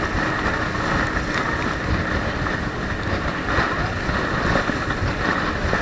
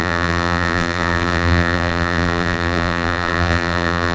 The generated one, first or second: second